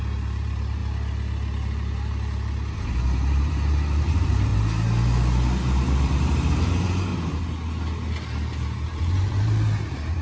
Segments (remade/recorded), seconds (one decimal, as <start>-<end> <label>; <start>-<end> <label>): 0.0-0.8 remade; 0.8-2.9 recorded; 2.9-4.5 remade; 4.5-6.0 recorded; 6.0-7.1 remade; 7.1-9.0 recorded; 9.0-10.2 remade